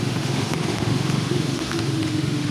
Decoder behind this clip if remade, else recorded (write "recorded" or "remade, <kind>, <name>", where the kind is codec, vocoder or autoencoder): remade, autoencoder, DAC-VAE